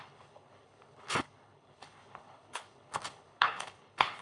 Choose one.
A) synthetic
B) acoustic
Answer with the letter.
A